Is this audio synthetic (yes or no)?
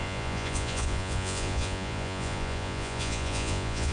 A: yes